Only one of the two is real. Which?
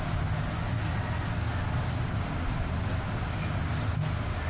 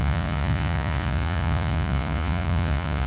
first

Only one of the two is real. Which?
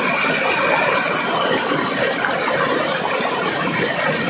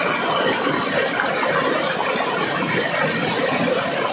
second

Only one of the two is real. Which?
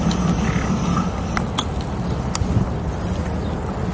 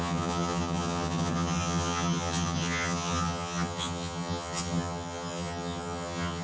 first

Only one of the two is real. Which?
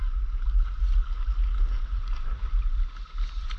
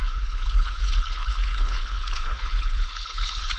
first